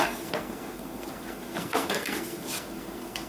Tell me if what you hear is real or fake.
fake